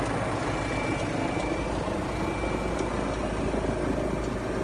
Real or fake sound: real